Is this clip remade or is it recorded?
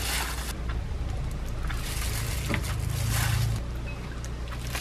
recorded